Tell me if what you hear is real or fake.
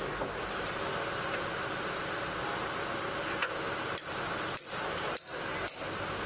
real